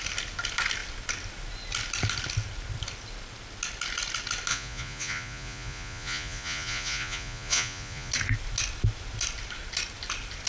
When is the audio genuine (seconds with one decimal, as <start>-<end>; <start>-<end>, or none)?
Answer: 0.0-4.5; 8.1-10.5